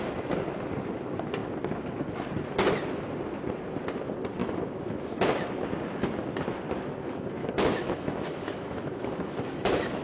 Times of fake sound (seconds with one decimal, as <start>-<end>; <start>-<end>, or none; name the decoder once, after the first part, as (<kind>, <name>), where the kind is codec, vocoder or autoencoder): 4.4-5.2 (autoencoder, DAC-VAE); 7.4-10.0

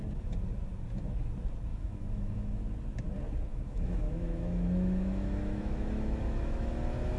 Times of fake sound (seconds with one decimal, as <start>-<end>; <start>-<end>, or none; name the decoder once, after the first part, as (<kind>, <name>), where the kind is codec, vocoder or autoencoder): 1.7-2.6 (autoencoder, DAC-VAE); 3.5-6.7

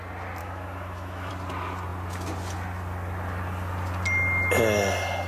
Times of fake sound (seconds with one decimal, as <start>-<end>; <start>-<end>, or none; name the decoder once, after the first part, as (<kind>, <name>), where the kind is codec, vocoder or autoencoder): 0.4-1.3 (autoencoder, DAC-VAE)

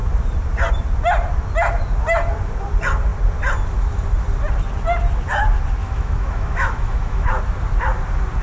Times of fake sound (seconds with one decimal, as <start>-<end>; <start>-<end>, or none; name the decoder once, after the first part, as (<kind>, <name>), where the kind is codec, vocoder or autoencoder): 5.8-7.4 (autoencoder, DAC-VAE)